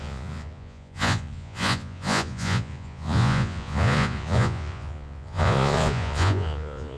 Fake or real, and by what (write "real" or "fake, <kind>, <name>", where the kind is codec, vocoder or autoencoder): fake, vocoder, Vocos